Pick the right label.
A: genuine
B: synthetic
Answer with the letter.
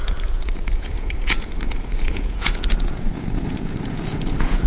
B